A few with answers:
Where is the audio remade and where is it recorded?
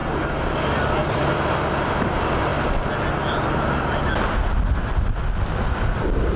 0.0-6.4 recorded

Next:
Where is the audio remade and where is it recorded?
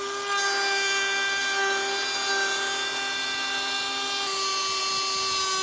0.0-5.6 recorded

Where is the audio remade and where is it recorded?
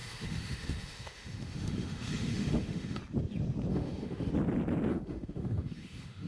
0.0-3.0 remade; 3.0-3.7 recorded; 3.7-4.3 remade; 4.3-4.9 recorded; 4.9-6.3 remade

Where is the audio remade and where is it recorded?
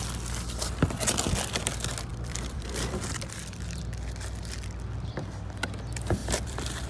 0.0-2.1 recorded; 2.1-3.8 remade; 3.8-6.2 recorded; 6.2-6.9 remade